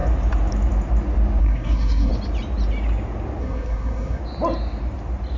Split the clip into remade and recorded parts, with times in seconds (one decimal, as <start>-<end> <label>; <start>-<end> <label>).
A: 0.0-1.4 recorded; 1.4-2.1 remade; 2.1-3.4 recorded; 3.4-4.2 remade; 4.2-5.4 recorded

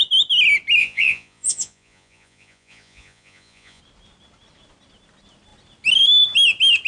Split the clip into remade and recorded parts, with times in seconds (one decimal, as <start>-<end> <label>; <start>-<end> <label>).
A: 0.0-0.8 recorded; 0.8-3.8 remade; 3.8-6.9 recorded